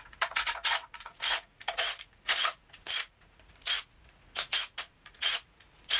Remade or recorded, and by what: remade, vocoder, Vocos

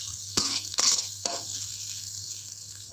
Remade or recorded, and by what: remade, codec, SNAC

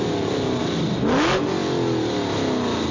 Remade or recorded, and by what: recorded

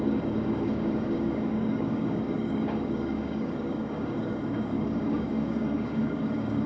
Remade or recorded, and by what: remade, codec, DAC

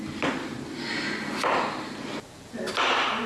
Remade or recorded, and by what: recorded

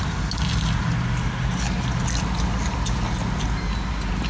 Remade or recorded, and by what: recorded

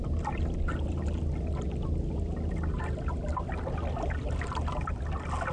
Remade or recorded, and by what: recorded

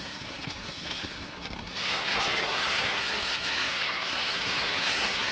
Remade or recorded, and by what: remade, codec, SNAC